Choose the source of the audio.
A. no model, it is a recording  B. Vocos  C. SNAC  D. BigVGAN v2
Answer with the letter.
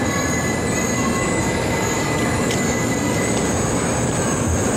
A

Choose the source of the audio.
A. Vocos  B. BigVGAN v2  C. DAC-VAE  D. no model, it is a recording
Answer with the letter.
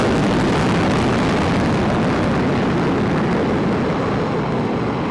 D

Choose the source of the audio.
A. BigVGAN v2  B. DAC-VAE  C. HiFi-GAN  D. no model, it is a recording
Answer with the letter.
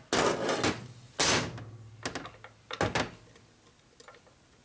D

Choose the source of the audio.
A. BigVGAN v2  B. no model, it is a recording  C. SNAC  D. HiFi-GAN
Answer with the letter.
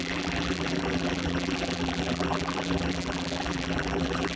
A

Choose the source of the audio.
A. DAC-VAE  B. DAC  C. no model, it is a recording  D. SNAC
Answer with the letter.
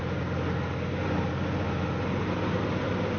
C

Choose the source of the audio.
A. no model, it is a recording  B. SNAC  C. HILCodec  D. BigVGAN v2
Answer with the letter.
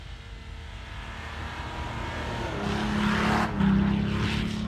A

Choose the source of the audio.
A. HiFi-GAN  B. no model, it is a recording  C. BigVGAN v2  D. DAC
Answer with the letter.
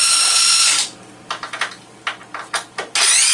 B